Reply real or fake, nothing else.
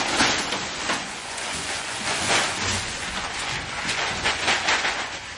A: fake